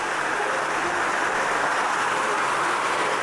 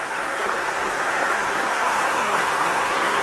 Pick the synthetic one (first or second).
second